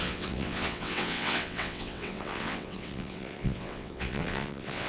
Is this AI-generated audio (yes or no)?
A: yes